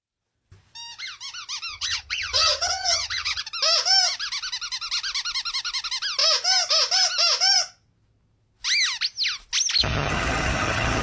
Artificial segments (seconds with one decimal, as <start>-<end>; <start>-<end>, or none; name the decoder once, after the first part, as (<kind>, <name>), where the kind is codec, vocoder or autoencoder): 1.7-3.4 (vocoder, HiFi-GAN); 9.8-11.0